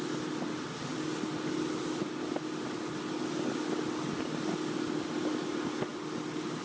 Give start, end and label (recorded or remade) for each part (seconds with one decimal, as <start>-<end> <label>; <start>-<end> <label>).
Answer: 0.0-6.6 recorded